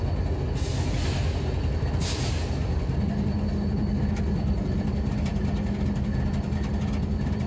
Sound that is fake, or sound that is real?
real